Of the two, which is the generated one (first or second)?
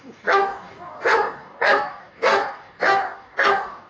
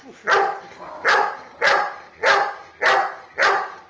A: first